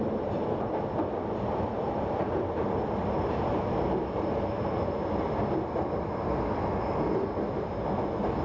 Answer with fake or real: real